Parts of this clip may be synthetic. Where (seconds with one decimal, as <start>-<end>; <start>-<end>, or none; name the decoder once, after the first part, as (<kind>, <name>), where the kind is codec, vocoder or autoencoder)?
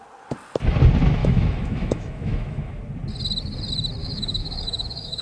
1.2-2.8 (autoencoder, DAC-VAE); 4.0-5.2